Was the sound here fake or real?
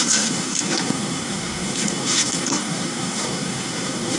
fake